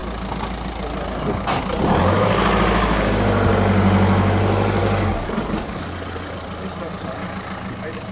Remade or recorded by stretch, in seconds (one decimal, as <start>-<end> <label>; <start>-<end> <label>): 0.0-4.8 recorded; 4.8-5.9 remade; 5.9-8.1 recorded

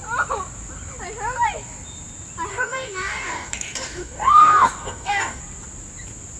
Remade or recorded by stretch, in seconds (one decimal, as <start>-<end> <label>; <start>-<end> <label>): 0.0-2.5 recorded; 2.5-5.4 remade; 5.4-6.4 recorded

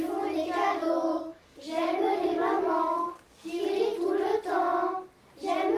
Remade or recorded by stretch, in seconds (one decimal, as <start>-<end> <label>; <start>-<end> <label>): 0.0-0.6 recorded; 0.6-3.5 remade; 3.5-5.8 recorded

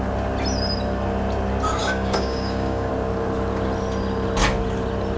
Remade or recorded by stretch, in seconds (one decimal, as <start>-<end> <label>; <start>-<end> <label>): 0.0-1.8 recorded; 1.8-2.9 remade; 2.9-5.2 recorded